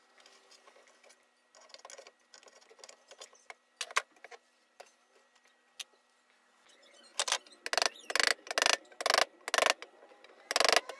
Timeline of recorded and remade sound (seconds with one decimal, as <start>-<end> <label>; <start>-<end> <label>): 0.0-11.0 recorded